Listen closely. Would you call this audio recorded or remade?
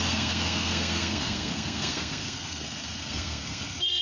remade